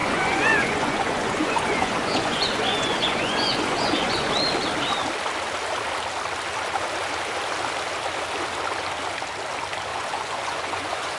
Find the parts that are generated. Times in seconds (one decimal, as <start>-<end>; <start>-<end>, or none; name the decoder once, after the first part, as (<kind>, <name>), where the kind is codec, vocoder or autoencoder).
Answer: 0.0-4.3 (vocoder, Vocos); 9.9-11.2